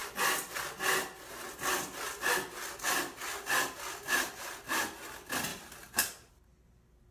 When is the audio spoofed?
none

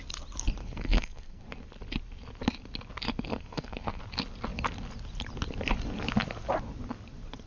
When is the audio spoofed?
0.6-1.4 (codec, SNAC); 3.3-4.0

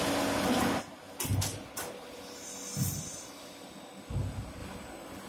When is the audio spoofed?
none

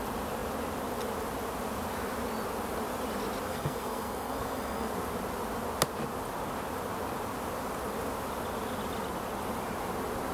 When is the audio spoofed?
3.5-4.9 (codec, SNAC)

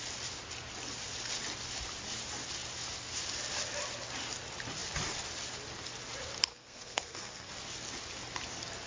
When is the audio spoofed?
6.5-7.5 (codec, SNAC)